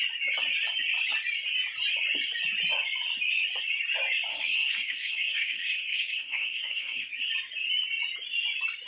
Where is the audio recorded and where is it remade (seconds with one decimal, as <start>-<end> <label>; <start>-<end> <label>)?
0.0-4.3 recorded; 4.3-7.1 remade; 7.1-8.9 recorded